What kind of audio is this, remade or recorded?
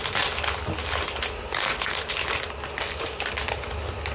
recorded